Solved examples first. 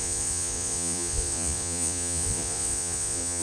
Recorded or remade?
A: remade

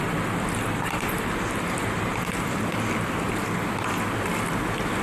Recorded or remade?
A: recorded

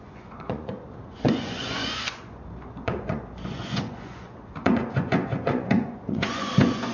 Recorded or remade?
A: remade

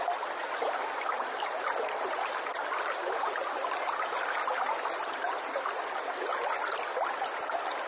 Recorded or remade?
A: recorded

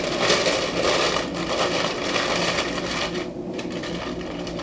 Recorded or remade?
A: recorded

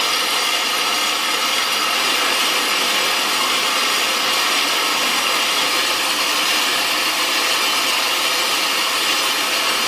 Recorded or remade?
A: recorded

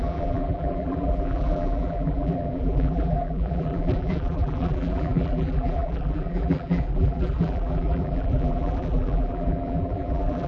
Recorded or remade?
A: remade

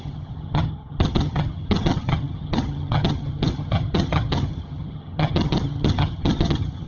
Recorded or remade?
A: remade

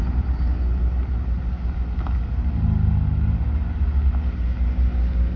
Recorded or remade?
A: recorded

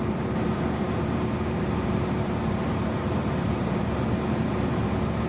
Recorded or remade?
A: remade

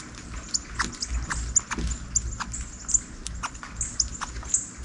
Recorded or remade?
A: recorded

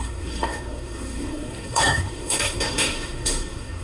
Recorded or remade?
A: remade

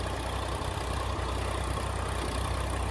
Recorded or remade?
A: recorded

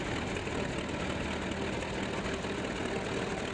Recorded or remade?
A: recorded